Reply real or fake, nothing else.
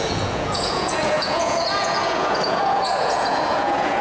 fake